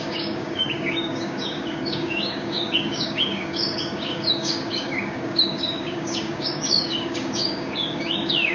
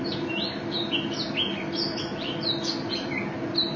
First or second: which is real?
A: second